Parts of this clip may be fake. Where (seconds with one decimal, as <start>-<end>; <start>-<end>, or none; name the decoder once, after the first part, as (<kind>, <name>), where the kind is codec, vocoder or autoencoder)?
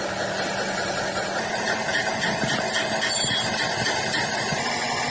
none